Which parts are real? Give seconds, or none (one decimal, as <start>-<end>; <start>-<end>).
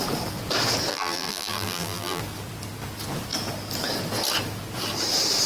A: 0.0-0.9; 2.2-5.5